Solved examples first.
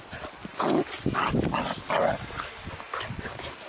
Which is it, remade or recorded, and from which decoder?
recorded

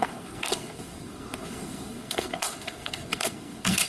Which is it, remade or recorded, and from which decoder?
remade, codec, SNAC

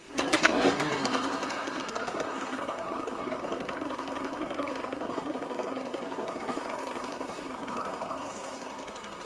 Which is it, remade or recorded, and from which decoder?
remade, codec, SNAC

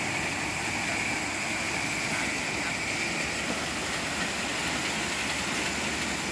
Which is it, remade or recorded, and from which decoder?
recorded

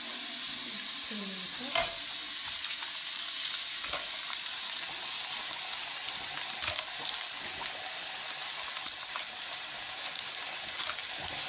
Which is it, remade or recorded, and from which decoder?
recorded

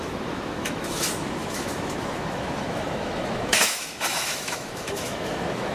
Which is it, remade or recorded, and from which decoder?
remade, autoencoder, DAC-VAE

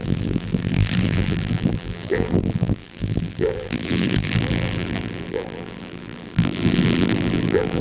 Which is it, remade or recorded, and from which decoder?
remade, vocoder, BigVGAN v2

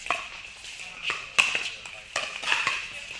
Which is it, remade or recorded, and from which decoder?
recorded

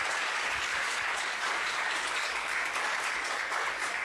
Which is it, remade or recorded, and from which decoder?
remade, codec, DAC